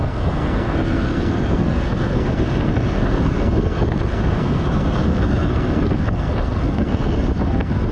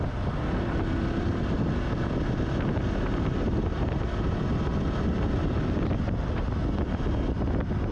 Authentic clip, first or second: second